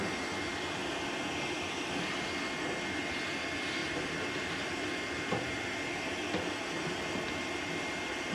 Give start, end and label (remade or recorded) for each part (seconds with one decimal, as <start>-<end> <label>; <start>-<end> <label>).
0.0-3.8 recorded; 3.8-7.1 remade; 7.1-8.3 recorded